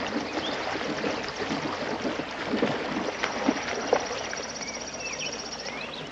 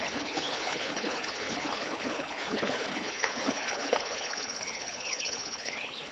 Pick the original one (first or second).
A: first